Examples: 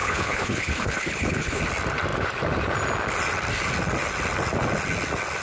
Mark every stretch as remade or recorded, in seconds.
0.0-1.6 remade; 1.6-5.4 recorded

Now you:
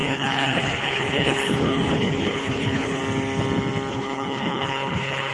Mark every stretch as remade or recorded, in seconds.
0.0-3.0 remade; 3.0-3.9 recorded; 3.9-5.3 remade

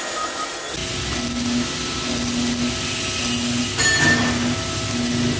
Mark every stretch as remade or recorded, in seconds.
0.0-5.4 recorded

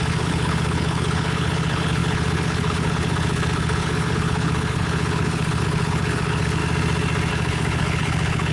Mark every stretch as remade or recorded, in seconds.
0.0-6.6 remade; 6.6-7.3 recorded; 7.3-8.5 remade

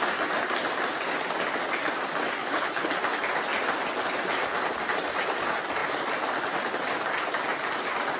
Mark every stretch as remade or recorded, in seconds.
0.0-2.4 recorded; 2.4-3.0 remade; 3.0-8.2 recorded